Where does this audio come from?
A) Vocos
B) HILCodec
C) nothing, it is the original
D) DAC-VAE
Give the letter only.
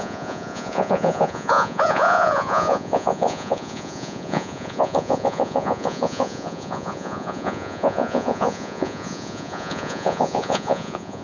A